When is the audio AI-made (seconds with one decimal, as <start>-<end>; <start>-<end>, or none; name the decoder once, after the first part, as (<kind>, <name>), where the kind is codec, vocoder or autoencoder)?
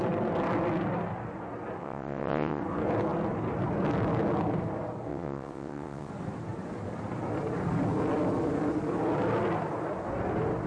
1.8-2.6 (vocoder, WaveNeXt); 5.1-6.1